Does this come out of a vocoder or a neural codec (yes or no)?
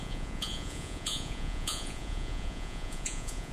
yes